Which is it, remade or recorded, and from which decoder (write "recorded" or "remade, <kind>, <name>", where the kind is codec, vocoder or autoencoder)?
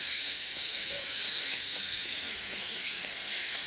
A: remade, codec, SNAC